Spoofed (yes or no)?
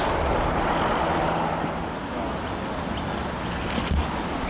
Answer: no